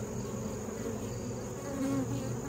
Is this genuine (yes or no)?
yes